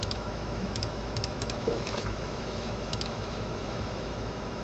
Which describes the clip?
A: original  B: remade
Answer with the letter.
B